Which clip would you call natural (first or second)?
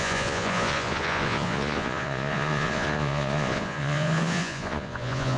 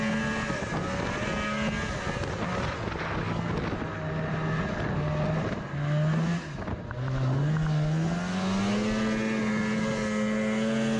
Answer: second